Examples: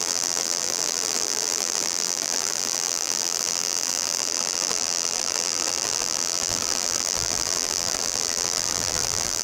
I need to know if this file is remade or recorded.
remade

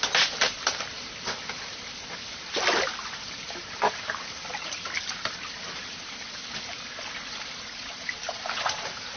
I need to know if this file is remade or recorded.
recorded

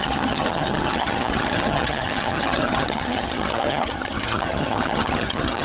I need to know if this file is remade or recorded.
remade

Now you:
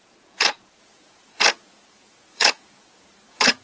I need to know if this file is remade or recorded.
remade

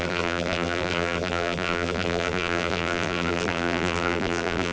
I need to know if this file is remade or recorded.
remade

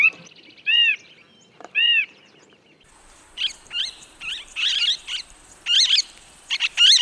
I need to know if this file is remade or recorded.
remade